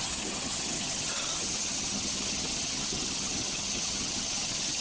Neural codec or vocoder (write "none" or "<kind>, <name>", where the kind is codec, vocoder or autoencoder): vocoder, HiFi-GAN